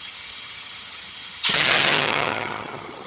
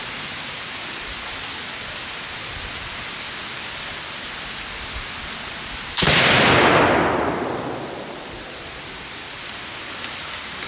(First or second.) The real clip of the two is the second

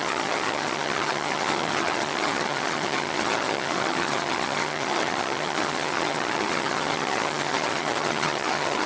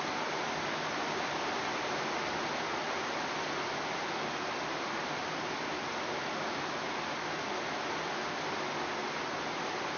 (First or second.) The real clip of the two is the second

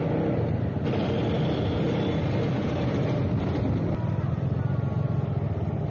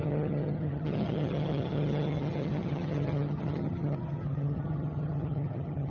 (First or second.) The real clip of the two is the first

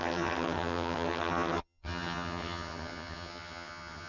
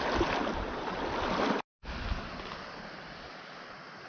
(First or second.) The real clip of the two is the second